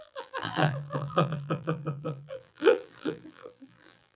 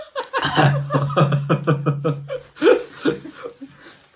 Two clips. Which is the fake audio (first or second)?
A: first